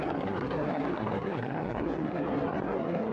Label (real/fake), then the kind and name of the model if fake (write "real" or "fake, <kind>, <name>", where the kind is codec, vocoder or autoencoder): fake, codec, SNAC